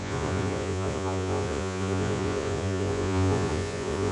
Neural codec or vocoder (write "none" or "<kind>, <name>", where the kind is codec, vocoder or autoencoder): vocoder, Vocos